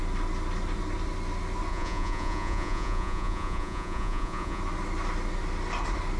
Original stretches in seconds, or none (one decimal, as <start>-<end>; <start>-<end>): 0.0-1.7; 4.6-6.2